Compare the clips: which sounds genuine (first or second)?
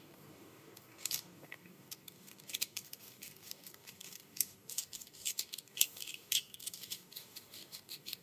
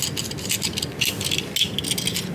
second